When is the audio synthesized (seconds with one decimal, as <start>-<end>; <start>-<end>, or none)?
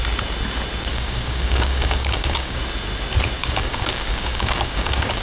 0.9-2.6; 3.4-5.2